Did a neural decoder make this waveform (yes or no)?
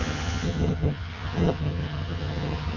yes